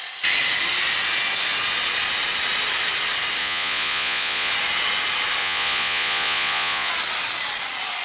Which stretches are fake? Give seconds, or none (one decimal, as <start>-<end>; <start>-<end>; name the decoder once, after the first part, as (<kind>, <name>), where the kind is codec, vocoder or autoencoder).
3.4-4.5 (vocoder, Vocos); 5.4-6.9